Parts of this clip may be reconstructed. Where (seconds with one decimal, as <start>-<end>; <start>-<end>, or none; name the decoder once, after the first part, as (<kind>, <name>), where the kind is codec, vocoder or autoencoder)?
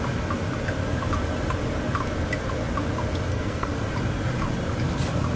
3.3-3.9 (codec, SNAC)